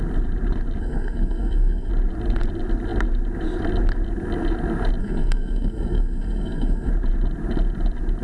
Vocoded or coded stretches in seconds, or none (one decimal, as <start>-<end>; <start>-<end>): 0.8-1.9; 5.0-6.9